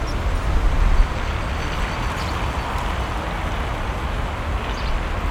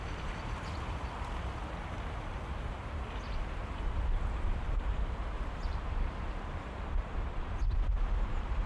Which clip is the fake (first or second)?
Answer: second